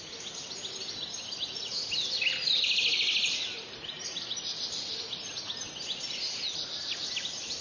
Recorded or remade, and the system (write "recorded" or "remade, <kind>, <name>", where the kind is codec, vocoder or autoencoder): recorded